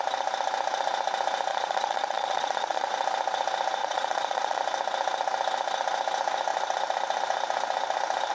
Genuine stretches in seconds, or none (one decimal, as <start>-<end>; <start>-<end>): 0.0-1.5; 2.9-3.8; 4.6-8.3